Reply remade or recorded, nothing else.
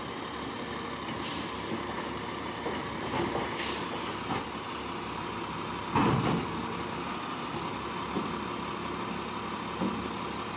recorded